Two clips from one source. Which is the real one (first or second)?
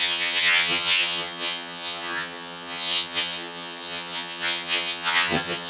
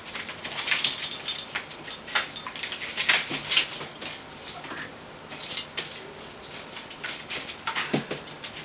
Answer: second